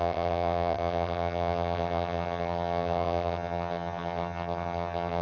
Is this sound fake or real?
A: fake